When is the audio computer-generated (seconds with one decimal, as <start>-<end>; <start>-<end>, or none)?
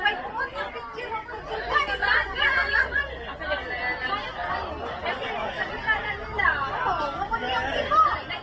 2.0-3.0